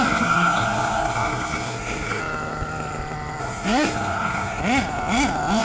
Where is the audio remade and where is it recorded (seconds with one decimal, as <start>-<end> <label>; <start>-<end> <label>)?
0.0-2.2 remade; 2.2-3.4 recorded; 3.4-4.6 remade; 4.6-5.6 recorded